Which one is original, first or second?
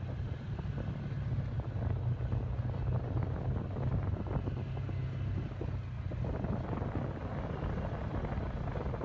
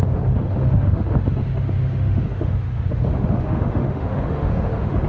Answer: first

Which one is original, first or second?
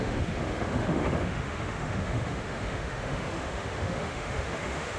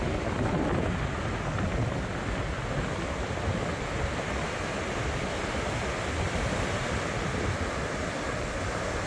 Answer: second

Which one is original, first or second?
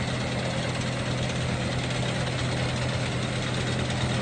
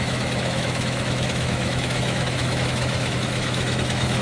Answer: first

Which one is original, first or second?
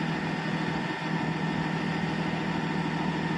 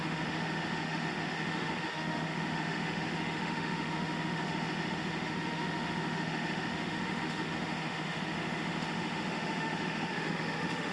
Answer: first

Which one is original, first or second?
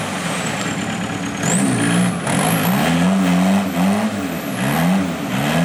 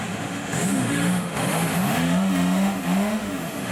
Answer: first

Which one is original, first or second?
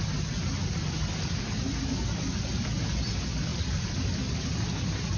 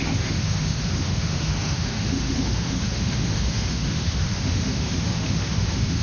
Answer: first